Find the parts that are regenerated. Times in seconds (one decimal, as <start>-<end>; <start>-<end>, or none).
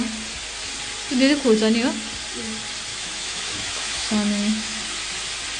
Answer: 2.9-4.8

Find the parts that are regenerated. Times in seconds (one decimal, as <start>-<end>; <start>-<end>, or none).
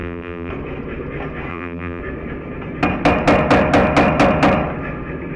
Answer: 0.0-0.5; 1.5-2.0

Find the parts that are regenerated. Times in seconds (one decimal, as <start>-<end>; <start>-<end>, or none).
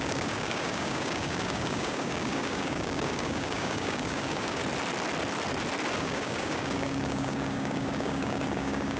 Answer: 0.0-4.6; 6.0-9.0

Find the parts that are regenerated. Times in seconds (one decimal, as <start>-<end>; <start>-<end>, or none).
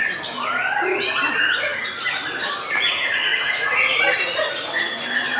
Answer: 1.7-2.9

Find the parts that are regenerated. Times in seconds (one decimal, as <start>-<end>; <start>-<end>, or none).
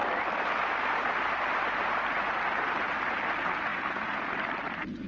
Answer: 3.7-4.3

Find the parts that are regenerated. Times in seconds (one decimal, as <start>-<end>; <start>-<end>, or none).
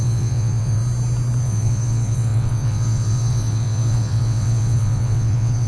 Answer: 0.0-0.8; 1.4-5.7